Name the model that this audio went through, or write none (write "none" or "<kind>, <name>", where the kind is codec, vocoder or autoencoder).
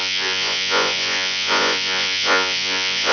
vocoder, Vocos